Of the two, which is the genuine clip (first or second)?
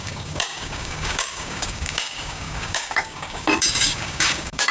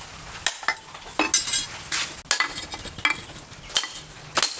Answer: second